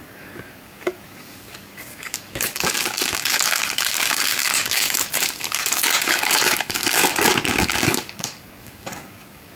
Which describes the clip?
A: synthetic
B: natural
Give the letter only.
A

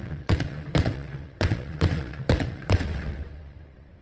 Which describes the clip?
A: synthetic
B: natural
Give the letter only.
A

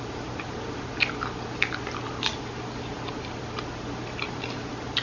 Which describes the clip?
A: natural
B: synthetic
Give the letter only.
A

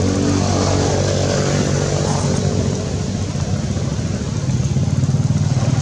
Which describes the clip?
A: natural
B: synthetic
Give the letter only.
A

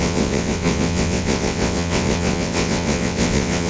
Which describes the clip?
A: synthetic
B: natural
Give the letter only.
A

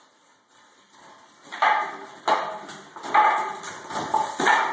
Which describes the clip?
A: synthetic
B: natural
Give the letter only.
B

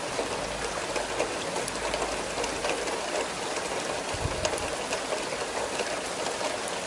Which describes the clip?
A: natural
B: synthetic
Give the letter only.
A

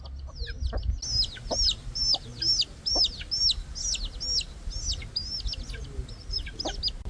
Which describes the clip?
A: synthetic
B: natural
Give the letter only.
B